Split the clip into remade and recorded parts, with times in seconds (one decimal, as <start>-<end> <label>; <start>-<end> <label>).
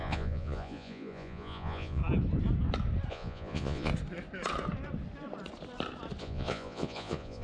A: 0.0-2.0 remade; 2.0-3.1 recorded; 3.1-3.9 remade; 3.9-6.2 recorded; 6.2-7.4 remade